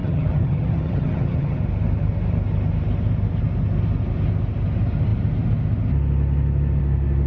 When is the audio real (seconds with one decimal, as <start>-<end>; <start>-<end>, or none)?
1.6-7.3